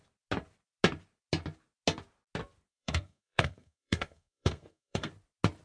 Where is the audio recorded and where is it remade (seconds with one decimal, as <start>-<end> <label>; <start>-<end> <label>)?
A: 0.0-2.7 recorded; 2.7-5.1 remade; 5.1-5.6 recorded